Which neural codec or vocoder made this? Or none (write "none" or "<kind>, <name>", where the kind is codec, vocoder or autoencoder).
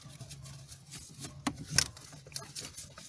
none